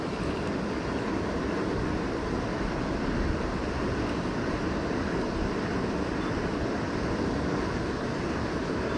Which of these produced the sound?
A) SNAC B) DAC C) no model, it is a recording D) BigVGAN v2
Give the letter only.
C